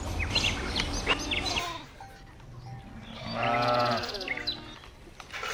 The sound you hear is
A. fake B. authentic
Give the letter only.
B